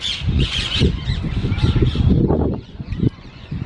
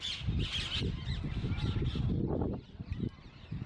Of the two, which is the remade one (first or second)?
first